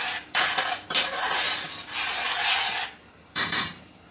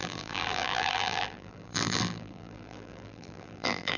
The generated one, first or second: second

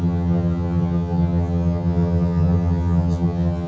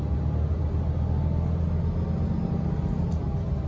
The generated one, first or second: first